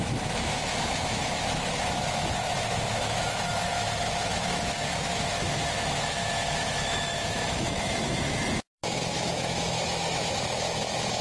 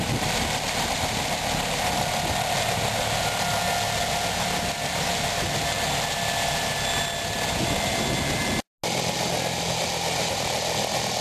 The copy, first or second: first